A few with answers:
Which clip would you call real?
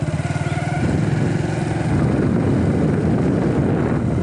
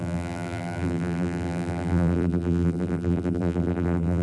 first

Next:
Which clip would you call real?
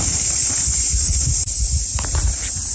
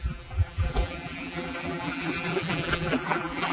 first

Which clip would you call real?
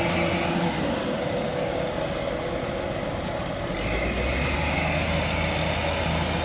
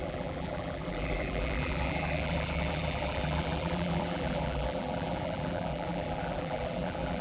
first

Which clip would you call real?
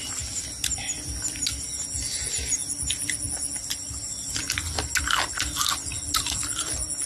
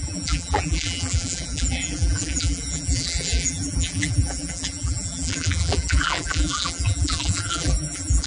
first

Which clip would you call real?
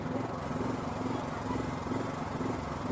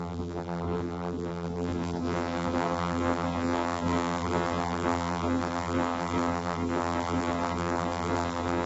first